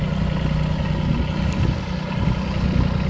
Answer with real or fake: real